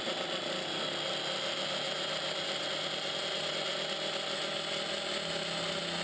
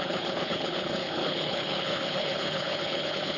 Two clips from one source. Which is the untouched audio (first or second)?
first